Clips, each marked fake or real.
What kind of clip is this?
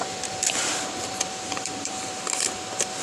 fake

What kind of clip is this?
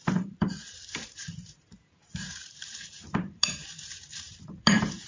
fake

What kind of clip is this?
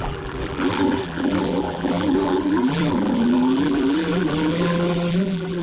fake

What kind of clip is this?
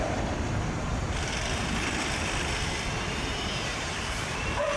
real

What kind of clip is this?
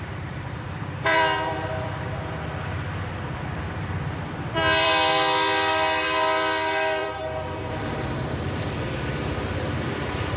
fake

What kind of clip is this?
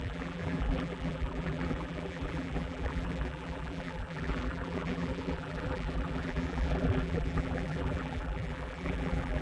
fake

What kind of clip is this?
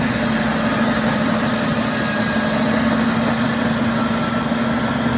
real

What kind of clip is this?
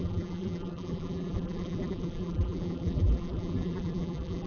fake